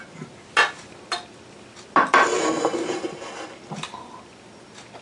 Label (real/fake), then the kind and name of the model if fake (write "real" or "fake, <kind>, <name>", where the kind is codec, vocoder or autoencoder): real